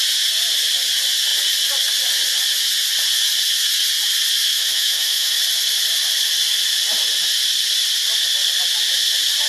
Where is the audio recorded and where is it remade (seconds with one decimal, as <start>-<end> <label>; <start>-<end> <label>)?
0.0-4.5 recorded; 4.5-5.4 remade; 5.4-9.5 recorded